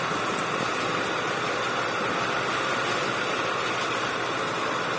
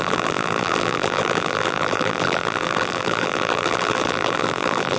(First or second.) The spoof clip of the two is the second